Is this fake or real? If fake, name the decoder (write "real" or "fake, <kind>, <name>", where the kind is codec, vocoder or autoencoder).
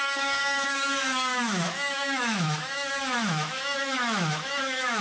fake, autoencoder, DAC-VAE